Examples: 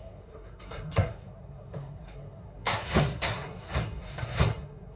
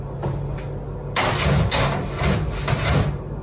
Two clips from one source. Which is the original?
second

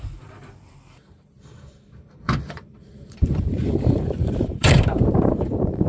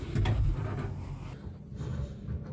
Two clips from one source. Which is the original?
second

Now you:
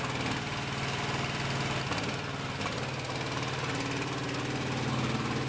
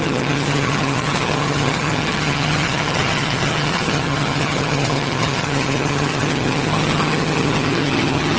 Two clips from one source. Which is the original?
first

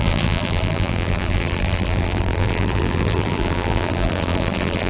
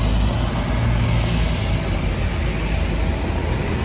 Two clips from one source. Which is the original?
second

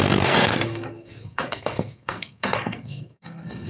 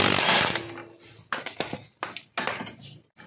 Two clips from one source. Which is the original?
second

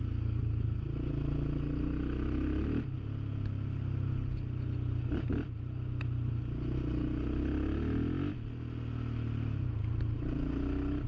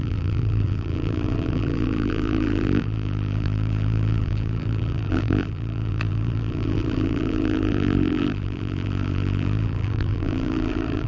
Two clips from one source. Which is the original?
first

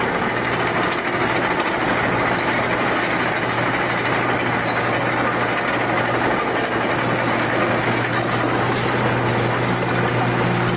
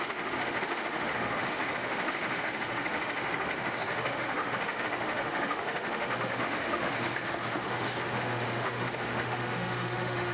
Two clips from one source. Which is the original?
first